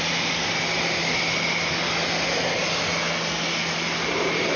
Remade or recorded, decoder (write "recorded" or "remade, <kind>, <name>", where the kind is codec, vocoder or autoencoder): recorded